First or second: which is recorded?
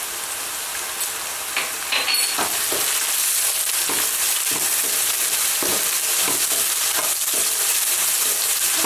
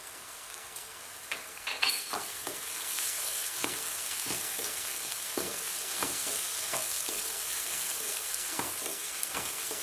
first